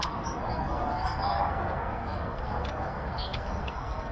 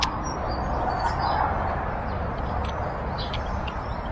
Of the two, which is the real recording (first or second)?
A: second